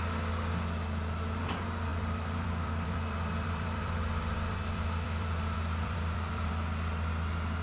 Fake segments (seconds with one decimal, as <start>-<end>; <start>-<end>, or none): 1.9-6.5